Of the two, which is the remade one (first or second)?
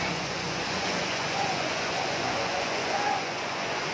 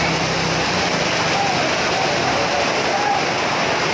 first